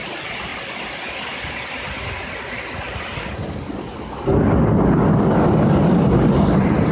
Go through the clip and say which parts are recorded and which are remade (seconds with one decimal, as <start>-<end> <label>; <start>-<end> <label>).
0.0-6.9 recorded